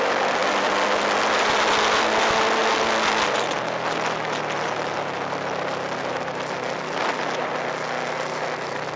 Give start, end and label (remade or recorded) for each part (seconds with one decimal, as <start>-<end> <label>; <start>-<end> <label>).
0.0-9.0 recorded